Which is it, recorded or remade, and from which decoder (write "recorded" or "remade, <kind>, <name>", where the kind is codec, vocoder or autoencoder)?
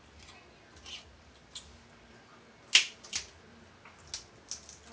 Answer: recorded